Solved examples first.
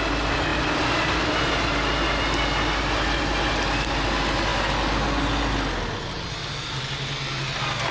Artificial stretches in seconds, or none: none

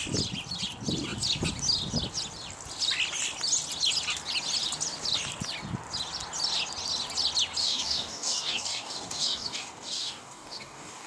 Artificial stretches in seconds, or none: 7.6-11.1 (codec, DAC)